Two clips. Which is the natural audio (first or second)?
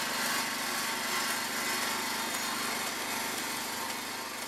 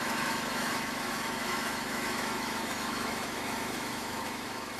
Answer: first